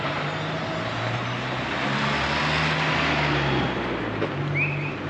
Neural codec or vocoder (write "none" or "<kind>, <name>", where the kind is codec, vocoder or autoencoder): none